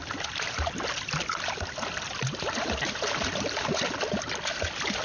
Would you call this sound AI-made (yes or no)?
no